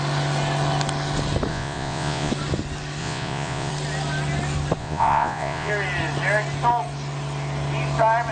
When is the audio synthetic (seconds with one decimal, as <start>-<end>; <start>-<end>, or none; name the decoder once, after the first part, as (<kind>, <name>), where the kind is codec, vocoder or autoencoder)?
1.5-2.3 (vocoder, Vocos); 3.0-3.7; 4.8-5.7